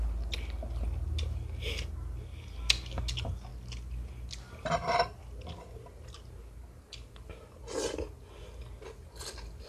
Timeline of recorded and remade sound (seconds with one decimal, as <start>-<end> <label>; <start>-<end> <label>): 0.0-9.7 recorded